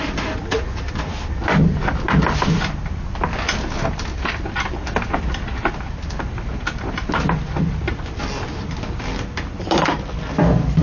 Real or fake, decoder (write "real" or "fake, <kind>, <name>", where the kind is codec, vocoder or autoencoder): real